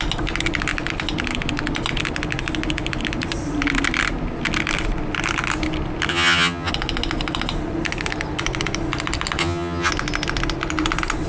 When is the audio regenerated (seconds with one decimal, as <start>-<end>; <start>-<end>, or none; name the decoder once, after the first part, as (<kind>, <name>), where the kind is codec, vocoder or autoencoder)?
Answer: 6.1-6.7 (vocoder, HiFi-GAN); 9.4-9.9